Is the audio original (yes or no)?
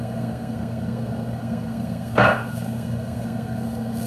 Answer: no